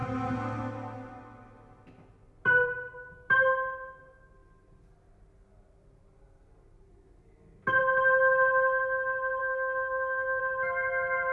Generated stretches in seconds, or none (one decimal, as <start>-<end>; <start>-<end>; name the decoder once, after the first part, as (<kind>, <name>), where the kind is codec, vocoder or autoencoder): 9.4-10.4 (codec, SNAC)